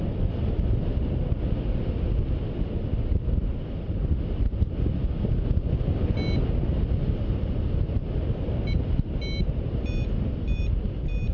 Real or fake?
real